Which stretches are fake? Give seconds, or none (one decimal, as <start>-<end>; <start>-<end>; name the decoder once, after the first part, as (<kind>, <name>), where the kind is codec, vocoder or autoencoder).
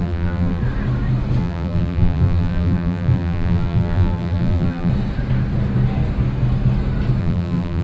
0.0-0.6 (vocoder, BigVGAN v2); 1.4-4.9; 7.2-7.8